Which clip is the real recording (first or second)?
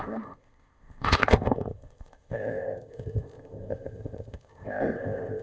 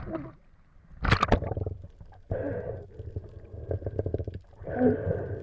second